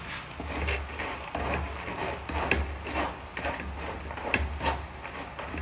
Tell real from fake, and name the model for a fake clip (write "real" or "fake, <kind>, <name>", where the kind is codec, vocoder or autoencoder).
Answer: real